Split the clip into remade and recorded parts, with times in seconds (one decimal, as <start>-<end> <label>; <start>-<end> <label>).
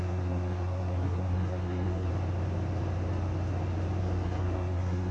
0.0-2.1 remade; 2.1-4.0 recorded; 4.0-5.1 remade